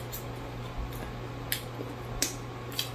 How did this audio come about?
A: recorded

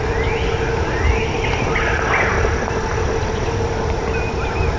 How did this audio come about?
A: recorded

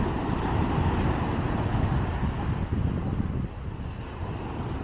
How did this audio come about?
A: recorded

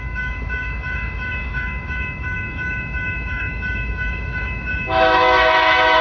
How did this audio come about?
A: remade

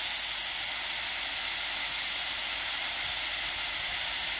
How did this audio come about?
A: recorded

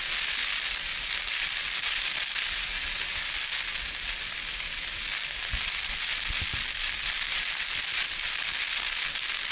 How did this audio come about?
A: recorded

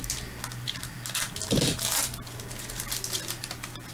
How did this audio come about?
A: recorded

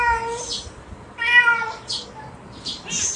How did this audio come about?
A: recorded